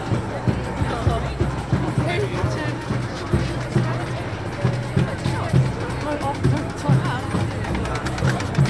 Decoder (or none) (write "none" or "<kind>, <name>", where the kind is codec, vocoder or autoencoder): none